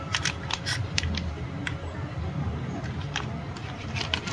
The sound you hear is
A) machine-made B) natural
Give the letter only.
B